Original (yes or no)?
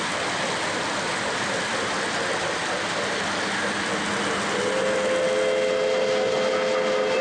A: yes